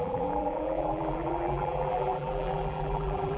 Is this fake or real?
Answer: fake